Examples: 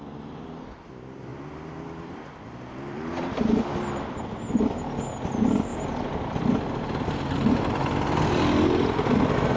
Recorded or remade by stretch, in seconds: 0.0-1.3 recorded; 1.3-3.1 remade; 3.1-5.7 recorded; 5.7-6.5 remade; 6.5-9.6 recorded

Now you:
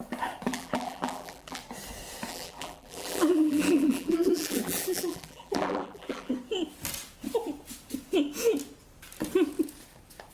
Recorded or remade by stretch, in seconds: 0.0-0.5 recorded; 0.5-1.6 remade; 1.6-2.3 recorded; 2.3-6.3 remade; 6.3-10.3 recorded

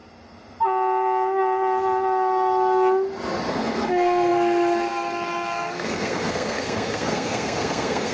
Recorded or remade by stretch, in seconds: 0.0-3.5 recorded; 3.5-8.1 remade

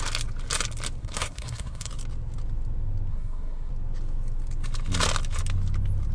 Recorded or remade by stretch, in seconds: 0.0-1.0 recorded; 1.0-1.9 remade; 1.9-3.1 recorded; 3.1-3.7 remade; 3.7-6.1 recorded

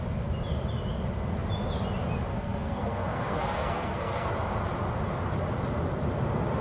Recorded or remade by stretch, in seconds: 0.0-2.3 recorded; 2.3-4.3 remade; 4.3-6.6 recorded

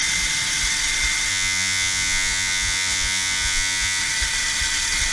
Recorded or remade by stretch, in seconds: 0.0-1.3 recorded; 1.3-4.0 remade; 4.0-5.1 recorded